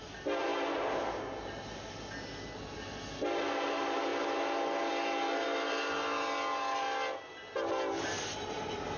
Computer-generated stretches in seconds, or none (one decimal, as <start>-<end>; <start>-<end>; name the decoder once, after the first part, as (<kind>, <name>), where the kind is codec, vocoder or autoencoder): none